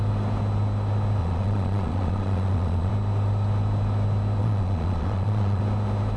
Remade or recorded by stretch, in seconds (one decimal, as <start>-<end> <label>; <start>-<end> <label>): 0.0-1.2 recorded; 1.2-2.9 remade; 2.9-4.4 recorded; 4.4-5.6 remade; 5.6-6.2 recorded